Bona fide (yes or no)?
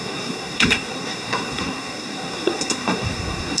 no